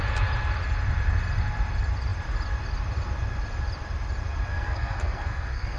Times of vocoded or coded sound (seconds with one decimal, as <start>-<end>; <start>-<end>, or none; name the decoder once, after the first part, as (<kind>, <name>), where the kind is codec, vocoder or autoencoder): 4.5-5.8 (codec, SNAC)